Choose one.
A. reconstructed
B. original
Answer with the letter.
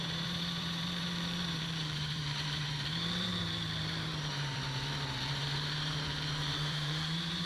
A